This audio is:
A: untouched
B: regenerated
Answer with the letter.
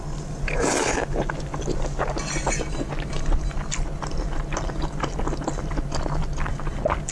A